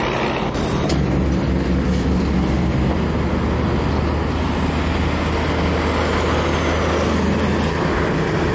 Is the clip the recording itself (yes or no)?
yes